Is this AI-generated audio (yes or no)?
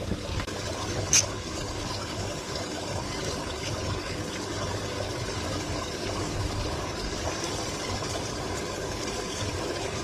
yes